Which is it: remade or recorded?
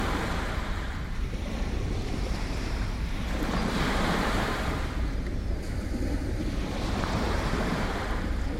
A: remade